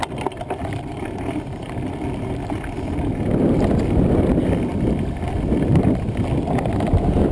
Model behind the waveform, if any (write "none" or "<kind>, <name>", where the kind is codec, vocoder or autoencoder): none